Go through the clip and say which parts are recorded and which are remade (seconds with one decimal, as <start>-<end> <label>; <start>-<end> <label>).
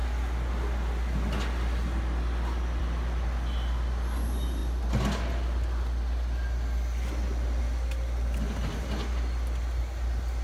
0.0-10.4 recorded